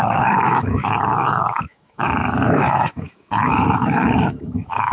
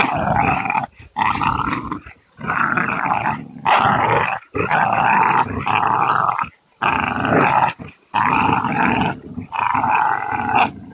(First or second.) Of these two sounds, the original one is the second